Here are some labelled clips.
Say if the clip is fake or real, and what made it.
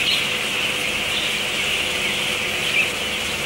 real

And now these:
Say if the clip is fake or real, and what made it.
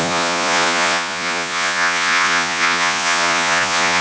fake, vocoder, Vocos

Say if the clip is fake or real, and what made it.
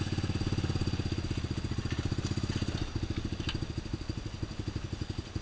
real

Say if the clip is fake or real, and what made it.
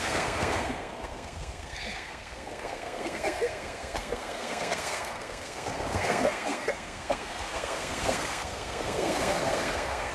fake, codec, SNAC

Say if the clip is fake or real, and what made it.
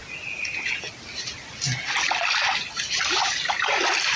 real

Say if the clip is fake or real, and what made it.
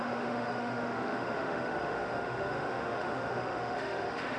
fake, autoencoder, DAC-VAE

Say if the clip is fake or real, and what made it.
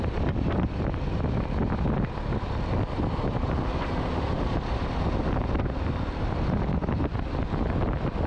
real